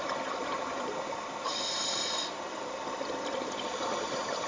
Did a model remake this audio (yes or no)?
yes